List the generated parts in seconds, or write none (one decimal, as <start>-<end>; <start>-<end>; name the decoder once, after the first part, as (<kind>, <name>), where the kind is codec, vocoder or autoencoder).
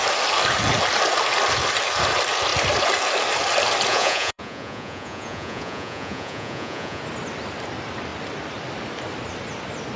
3.9-7.0 (vocoder, Vocos)